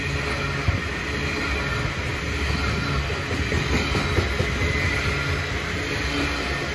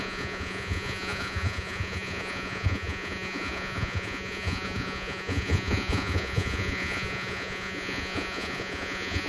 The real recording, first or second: first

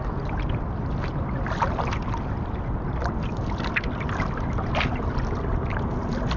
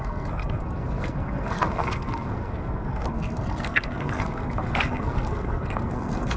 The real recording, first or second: first